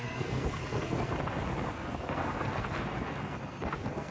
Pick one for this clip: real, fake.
fake